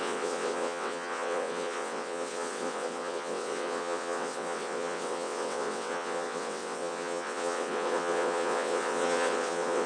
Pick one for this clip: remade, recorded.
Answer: remade